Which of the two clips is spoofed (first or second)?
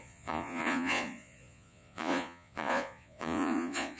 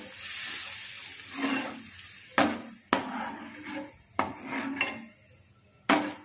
first